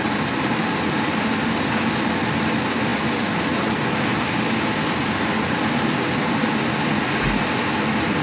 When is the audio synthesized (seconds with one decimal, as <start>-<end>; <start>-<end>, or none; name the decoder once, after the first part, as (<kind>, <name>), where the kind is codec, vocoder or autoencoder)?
none